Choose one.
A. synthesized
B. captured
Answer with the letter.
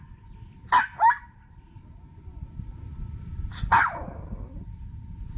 A